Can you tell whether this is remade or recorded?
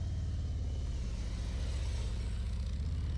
recorded